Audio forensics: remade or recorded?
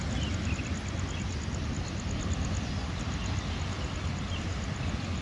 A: recorded